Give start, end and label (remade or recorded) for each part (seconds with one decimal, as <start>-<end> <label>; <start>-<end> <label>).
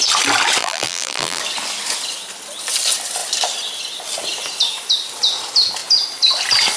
0.0-0.6 recorded; 0.6-1.4 remade; 1.4-6.8 recorded